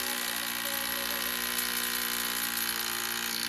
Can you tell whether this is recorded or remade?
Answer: recorded